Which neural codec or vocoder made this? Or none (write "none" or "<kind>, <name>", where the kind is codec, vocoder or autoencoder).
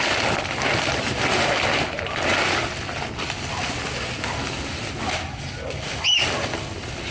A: none